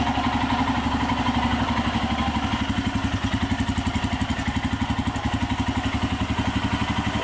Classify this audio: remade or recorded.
recorded